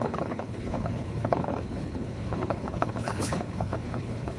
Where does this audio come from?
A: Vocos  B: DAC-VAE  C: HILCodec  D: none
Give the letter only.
C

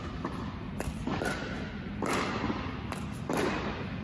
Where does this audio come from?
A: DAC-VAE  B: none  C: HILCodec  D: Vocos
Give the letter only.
B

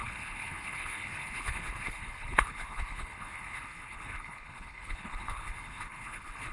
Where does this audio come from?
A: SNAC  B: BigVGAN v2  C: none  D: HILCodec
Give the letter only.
D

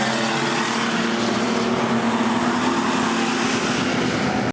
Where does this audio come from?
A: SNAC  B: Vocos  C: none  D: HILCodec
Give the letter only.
C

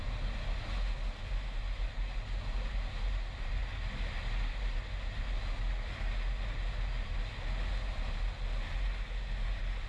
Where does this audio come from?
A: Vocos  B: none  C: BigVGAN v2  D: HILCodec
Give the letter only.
B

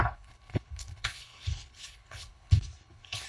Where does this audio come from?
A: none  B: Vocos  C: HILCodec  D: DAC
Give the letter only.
C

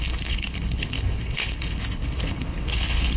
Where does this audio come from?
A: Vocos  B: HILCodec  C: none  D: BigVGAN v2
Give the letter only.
B